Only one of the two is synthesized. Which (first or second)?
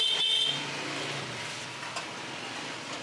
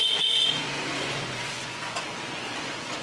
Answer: second